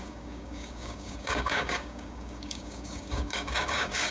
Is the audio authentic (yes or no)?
no